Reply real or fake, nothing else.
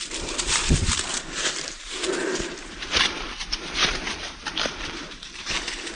fake